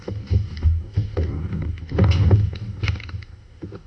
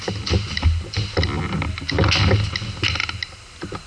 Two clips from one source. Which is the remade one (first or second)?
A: first